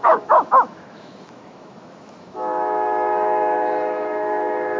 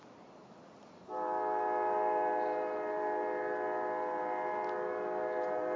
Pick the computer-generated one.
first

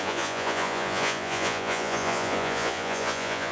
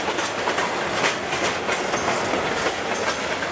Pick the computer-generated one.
first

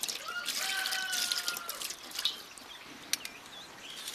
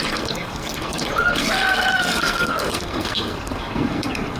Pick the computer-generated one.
second